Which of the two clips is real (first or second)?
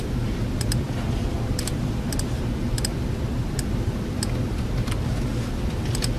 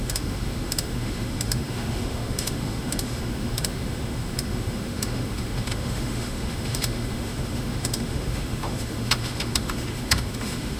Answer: first